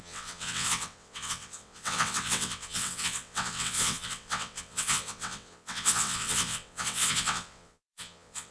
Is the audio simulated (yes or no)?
yes